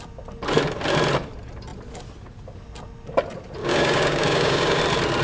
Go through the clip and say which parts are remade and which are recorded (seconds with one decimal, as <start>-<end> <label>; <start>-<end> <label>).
0.0-3.6 recorded; 3.6-4.8 remade; 4.8-5.2 recorded